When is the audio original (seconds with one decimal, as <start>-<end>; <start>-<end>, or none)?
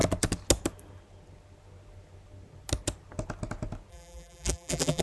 0.0-3.9